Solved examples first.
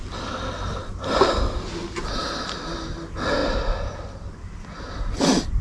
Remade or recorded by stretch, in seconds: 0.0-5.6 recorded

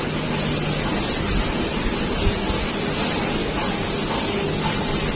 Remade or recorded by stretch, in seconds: 0.0-5.2 recorded

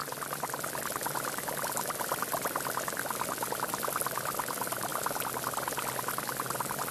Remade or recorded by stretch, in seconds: 0.0-6.9 recorded

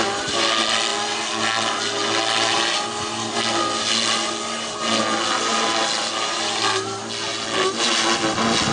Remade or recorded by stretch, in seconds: 0.0-8.7 recorded

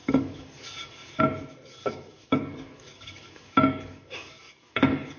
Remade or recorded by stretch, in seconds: 0.0-1.2 remade; 1.2-1.8 recorded; 1.8-5.2 remade

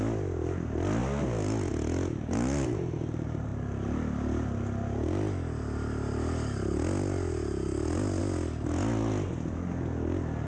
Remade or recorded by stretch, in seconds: 0.0-10.5 recorded

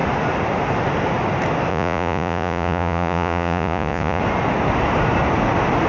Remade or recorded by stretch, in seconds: 0.0-1.7 recorded; 1.7-4.2 remade; 4.2-5.9 recorded